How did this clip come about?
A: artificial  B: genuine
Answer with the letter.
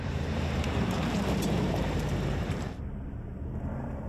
A